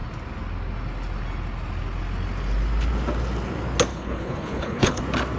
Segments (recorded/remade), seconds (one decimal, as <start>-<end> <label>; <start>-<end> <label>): 0.0-3.9 recorded; 3.9-5.0 remade; 5.0-5.4 recorded